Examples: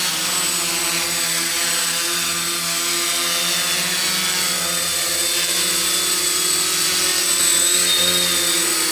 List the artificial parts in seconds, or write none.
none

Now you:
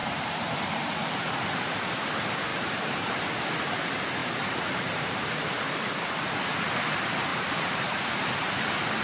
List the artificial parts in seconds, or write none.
0.0-0.9 (vocoder, BigVGAN v2); 2.5-3.1; 4.2-5.3; 7.3-8.0

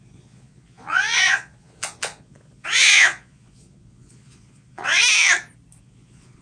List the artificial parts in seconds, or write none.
0.0-5.0 (vocoder, Vocos); 5.8-6.4